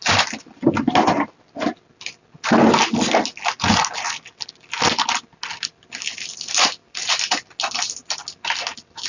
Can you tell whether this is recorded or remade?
recorded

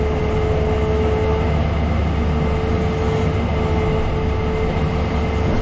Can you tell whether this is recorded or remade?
recorded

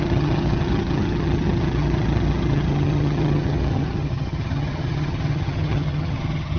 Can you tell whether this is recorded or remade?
remade